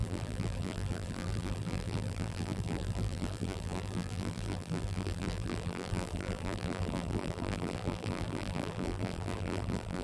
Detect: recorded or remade remade